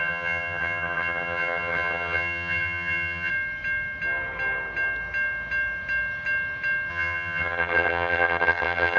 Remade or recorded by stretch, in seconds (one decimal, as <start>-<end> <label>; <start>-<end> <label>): 0.0-3.3 remade; 3.3-6.9 recorded; 6.9-9.0 remade